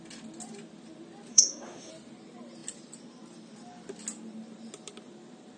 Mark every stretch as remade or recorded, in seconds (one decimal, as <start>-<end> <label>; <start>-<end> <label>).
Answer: 0.0-1.3 recorded; 1.3-1.9 remade; 1.9-5.6 recorded